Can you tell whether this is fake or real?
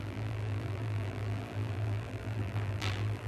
fake